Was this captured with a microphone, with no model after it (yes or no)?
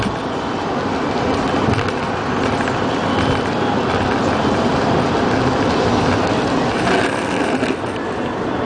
yes